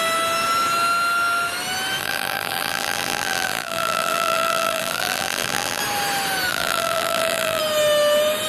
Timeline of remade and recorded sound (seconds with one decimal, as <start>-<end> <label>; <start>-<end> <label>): 0.0-2.0 recorded; 2.0-5.8 remade; 5.8-6.5 recorded; 6.5-7.6 remade; 7.6-8.5 recorded